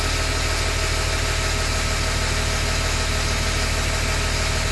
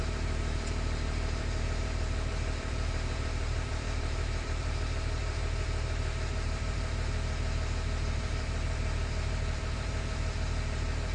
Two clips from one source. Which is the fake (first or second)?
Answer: second